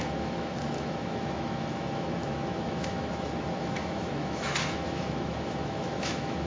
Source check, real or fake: fake